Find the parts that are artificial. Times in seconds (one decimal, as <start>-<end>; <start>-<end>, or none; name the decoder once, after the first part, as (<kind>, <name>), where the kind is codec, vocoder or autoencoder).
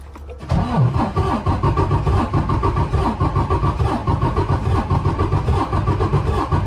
none